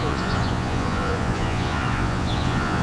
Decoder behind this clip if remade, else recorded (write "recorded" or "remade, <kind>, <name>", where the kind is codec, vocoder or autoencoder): remade, vocoder, Vocos